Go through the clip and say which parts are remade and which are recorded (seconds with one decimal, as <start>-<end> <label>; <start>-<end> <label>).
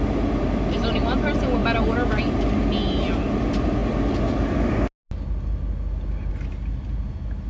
0.0-7.5 recorded